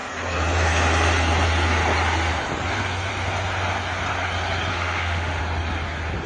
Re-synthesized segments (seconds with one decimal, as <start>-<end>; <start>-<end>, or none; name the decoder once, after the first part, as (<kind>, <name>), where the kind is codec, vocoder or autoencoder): 4.7-5.4 (autoencoder, DAC-VAE)